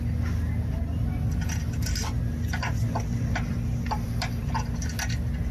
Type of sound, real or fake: real